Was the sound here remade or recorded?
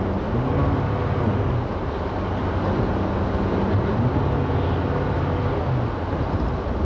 recorded